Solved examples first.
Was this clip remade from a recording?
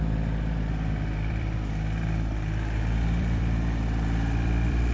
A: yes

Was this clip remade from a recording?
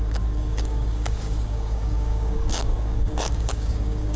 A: yes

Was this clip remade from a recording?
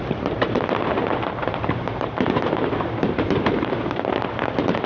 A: yes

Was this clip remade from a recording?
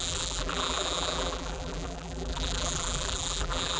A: yes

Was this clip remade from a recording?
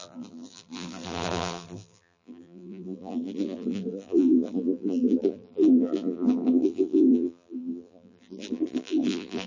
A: yes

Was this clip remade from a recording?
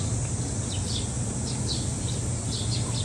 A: no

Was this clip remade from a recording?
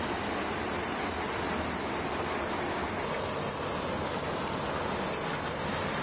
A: no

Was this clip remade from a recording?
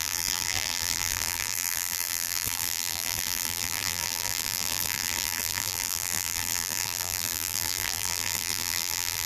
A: yes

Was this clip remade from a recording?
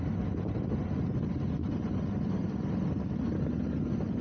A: no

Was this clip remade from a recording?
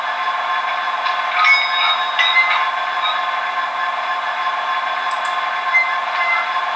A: no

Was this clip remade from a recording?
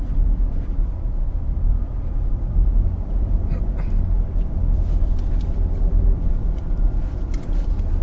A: no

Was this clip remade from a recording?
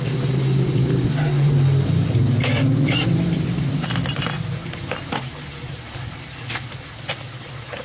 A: no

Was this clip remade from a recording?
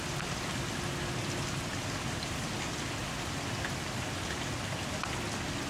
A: no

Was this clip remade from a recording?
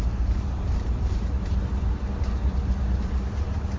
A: yes